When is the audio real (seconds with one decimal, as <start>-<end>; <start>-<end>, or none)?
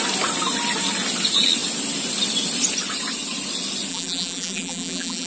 0.0-3.9